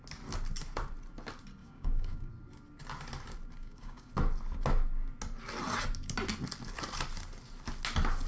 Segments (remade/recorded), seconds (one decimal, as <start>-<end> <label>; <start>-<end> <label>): 0.0-1.6 recorded; 1.6-2.3 remade; 2.3-3.6 recorded; 3.6-4.1 remade; 4.1-8.3 recorded